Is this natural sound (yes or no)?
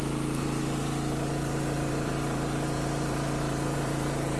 no